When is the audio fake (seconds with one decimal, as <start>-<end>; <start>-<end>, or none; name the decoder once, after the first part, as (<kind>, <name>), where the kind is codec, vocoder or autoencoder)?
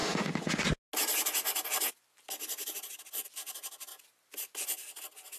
0.0-0.6 (autoencoder, DAC-VAE)